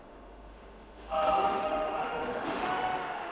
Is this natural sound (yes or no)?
no